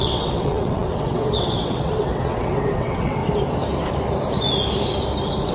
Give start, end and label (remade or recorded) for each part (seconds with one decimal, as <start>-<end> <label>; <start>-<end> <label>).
0.0-3.2 remade; 3.2-5.5 recorded